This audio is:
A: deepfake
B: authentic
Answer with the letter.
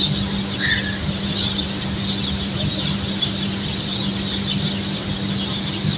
B